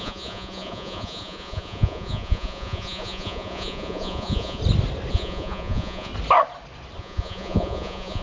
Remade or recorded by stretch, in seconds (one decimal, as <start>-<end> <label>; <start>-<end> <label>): 0.0-4.6 remade; 4.6-5.1 recorded; 5.1-6.1 remade; 6.1-7.0 recorded; 7.0-8.2 remade